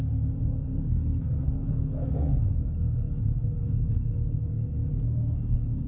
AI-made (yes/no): yes